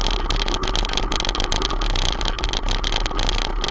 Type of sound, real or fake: real